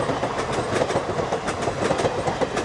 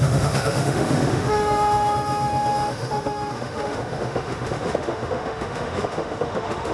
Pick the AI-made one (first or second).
second